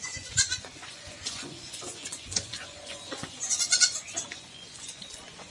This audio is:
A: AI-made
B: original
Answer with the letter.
A